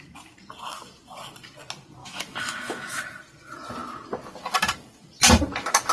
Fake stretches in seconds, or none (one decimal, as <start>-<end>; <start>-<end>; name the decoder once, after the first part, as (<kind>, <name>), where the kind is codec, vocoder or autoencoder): 2.0-3.0 (autoencoder, DAC-VAE)